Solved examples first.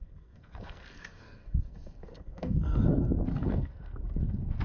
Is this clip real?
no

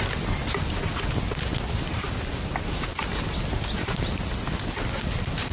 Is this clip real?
yes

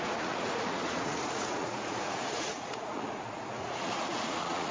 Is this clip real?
no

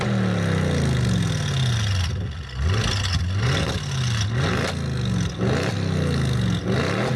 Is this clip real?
yes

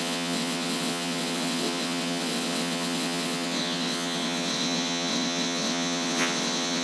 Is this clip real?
no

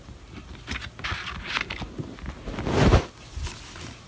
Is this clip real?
yes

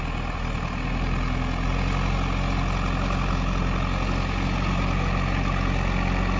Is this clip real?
yes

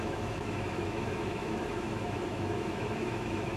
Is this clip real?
no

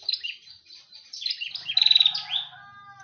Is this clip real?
yes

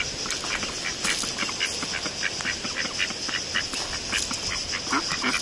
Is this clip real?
yes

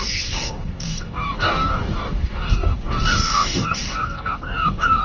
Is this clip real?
no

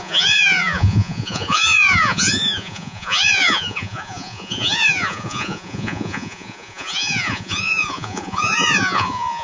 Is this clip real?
no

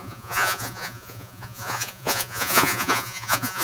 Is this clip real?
no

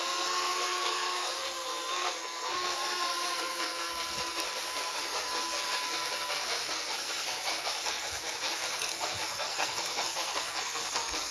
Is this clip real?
no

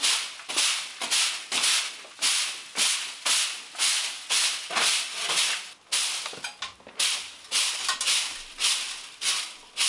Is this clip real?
yes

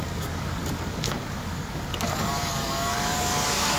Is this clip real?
no